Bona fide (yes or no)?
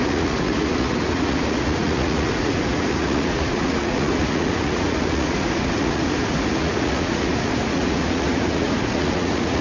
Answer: no